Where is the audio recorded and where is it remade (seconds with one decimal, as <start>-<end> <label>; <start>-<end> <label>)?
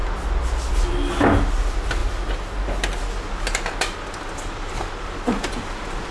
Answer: 0.0-6.1 recorded